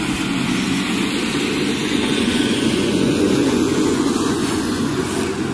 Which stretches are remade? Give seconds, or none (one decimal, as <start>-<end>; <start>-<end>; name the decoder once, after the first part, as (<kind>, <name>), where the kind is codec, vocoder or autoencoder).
1.8-5.1 (vocoder, Vocos)